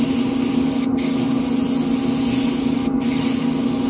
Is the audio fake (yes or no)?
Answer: no